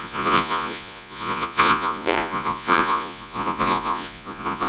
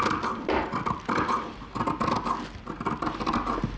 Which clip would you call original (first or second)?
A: second